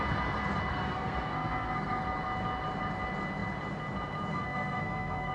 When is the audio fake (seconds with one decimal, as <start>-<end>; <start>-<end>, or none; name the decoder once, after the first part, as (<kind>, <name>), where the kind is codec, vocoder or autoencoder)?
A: 0.7-2.0 (codec, SNAC); 4.3-5.3